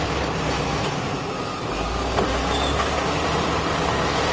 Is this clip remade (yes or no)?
no